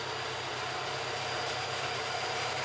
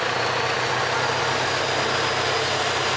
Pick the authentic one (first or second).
second